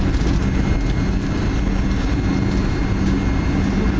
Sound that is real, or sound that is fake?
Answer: real